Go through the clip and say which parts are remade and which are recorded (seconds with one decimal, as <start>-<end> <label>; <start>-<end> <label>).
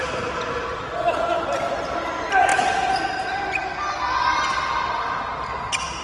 0.0-2.5 recorded; 2.5-3.2 remade; 3.2-6.0 recorded